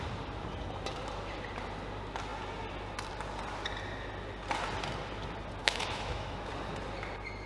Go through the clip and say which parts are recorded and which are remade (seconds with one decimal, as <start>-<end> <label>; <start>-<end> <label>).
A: 0.0-5.6 recorded; 5.6-6.5 remade; 6.5-7.5 recorded